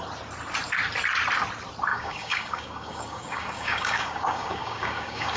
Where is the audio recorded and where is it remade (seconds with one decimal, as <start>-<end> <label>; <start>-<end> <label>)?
0.0-1.9 recorded; 1.9-5.4 remade